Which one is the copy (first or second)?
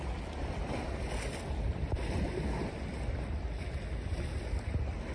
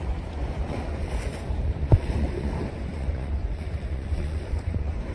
second